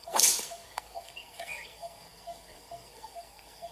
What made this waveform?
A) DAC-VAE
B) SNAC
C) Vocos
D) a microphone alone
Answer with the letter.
B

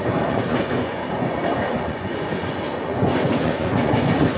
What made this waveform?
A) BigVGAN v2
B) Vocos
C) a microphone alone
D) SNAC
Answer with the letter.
B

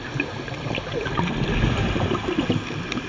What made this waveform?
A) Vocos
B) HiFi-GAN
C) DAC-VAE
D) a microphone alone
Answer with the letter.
D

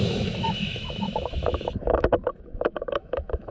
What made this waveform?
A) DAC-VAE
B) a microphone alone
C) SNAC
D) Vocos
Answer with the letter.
A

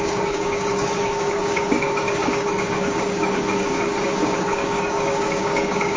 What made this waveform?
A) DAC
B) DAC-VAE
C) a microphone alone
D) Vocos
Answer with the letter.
A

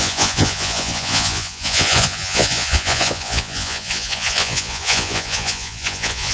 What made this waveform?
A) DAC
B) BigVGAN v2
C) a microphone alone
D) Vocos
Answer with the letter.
D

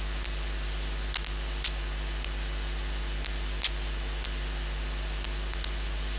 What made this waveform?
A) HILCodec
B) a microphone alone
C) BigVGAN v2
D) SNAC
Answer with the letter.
B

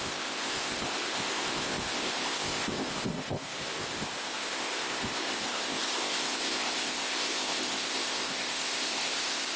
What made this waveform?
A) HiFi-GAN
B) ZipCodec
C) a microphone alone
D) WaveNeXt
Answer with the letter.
B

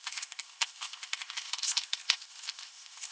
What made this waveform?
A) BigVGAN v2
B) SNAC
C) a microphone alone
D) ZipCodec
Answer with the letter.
D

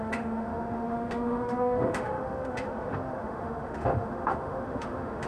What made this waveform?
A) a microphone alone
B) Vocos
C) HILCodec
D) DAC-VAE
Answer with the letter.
D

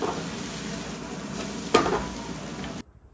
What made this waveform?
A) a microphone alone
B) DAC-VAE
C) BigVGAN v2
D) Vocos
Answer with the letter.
A